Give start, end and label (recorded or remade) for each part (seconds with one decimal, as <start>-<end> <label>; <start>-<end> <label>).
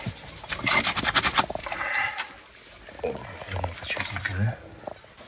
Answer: 0.0-5.3 recorded